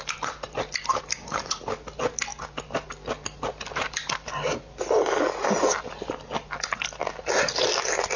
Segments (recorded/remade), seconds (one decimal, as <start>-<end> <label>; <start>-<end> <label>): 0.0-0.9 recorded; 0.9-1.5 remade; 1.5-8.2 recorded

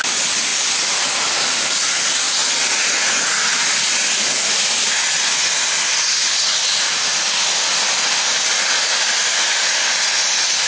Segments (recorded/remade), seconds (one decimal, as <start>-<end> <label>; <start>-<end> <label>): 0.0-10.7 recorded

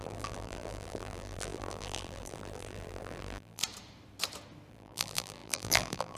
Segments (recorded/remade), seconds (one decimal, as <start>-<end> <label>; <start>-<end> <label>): 0.0-3.6 remade; 3.6-4.7 recorded; 4.7-6.2 remade

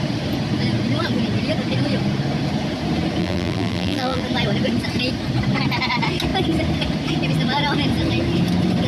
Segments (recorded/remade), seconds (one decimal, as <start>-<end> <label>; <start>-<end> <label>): 0.0-3.2 recorded; 3.2-4.2 remade; 4.2-8.9 recorded

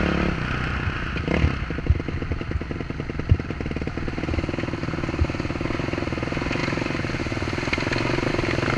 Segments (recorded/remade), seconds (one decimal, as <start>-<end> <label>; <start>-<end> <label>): 0.0-6.6 recorded; 6.6-7.2 remade; 7.2-8.8 recorded

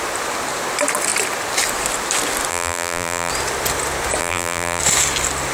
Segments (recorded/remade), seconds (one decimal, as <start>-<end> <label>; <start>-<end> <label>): 0.0-2.5 recorded; 2.5-3.3 remade; 3.3-4.2 recorded; 4.2-4.8 remade; 4.8-5.5 recorded

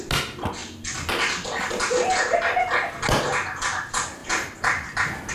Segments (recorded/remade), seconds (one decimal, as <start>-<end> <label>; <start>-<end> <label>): 0.0-5.3 recorded